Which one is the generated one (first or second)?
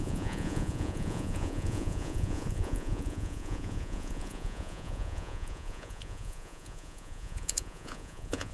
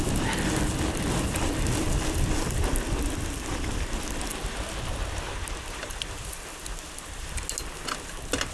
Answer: first